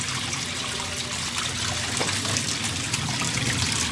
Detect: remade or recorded recorded